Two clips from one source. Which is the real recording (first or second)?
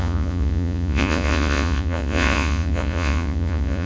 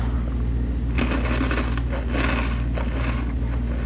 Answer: second